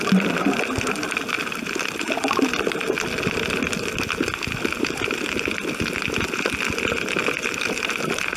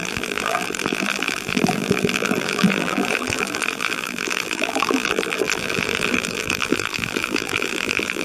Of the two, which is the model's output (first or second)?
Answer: second